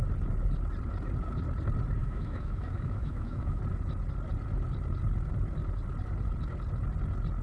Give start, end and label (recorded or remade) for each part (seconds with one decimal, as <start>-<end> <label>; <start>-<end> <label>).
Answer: 0.0-2.0 recorded; 2.0-3.6 remade; 3.6-7.4 recorded